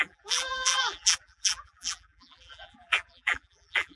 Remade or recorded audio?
remade